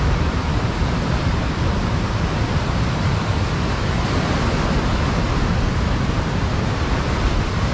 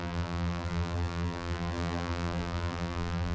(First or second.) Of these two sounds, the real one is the first